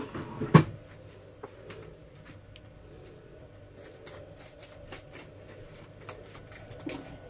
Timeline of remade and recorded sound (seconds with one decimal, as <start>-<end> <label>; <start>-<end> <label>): 0.0-7.3 recorded